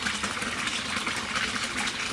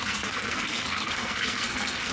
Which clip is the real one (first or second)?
first